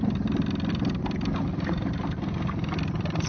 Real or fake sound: real